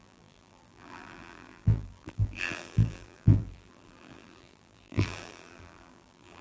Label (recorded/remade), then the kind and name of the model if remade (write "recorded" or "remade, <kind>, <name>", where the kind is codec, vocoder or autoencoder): remade, vocoder, BigVGAN v2